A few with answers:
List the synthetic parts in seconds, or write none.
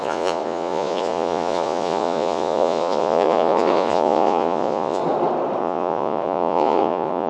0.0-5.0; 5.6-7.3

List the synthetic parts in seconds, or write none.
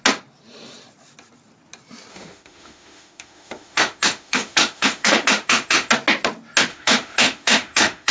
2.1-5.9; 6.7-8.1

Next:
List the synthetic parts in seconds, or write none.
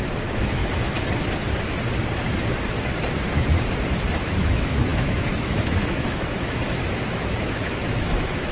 0.0-0.6; 4.2-8.5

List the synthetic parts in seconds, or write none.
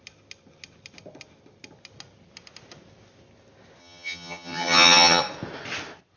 3.8-5.2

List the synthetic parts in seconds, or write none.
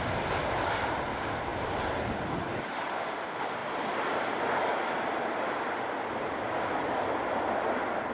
0.0-3.6; 5.8-8.1